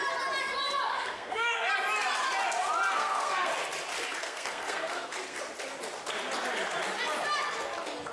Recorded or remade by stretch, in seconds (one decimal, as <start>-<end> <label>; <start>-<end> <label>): 0.0-0.9 recorded; 0.9-1.7 remade; 1.7-2.9 recorded; 2.9-3.5 remade; 3.5-4.2 recorded; 4.2-5.4 remade; 5.4-8.1 recorded